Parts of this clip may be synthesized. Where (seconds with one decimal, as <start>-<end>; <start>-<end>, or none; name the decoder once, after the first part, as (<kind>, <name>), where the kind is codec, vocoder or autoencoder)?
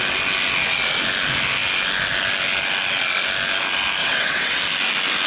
4.0-4.6 (vocoder, WaveNeXt)